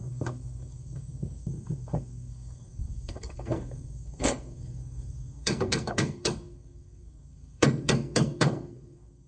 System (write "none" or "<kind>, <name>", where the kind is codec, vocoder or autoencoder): codec, SNAC